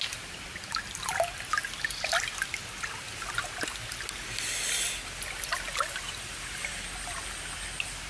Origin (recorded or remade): recorded